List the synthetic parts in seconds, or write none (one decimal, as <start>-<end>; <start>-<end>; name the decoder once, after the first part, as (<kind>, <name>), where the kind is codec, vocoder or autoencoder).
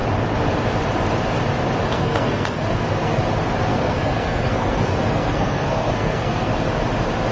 1.9-3.2 (codec, SNAC); 3.7-6.5